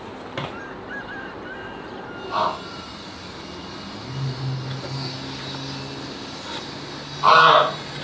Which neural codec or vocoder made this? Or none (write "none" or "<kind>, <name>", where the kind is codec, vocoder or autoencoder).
none